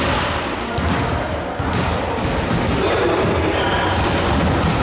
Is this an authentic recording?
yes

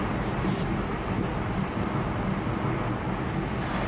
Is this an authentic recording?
yes